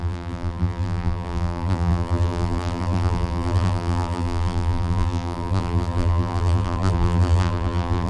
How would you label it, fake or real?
fake